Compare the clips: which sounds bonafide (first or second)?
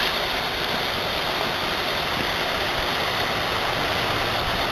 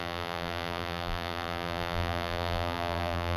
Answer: first